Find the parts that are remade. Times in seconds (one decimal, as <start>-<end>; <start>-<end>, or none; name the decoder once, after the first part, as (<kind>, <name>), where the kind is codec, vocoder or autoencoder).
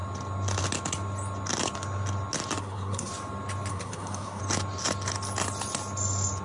2.6-3.1 (codec, SNAC); 3.7-4.4